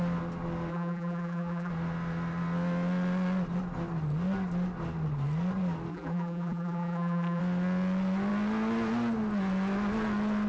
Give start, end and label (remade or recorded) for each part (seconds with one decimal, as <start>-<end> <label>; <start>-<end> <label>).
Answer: 0.0-0.7 recorded; 0.7-1.7 remade; 1.7-5.9 recorded; 5.9-7.4 remade; 7.4-10.5 recorded